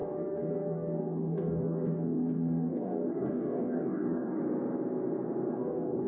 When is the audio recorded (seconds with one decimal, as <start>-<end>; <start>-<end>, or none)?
4.4-5.5